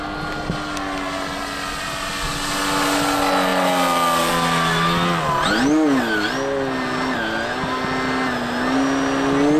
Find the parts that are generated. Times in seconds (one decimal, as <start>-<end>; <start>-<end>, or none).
none